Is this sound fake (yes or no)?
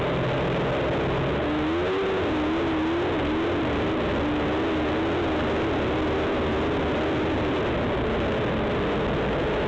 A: no